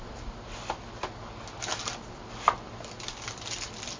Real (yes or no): yes